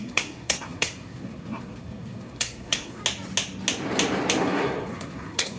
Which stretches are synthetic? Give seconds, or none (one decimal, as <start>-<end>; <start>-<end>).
0.0-3.0; 4.4-5.6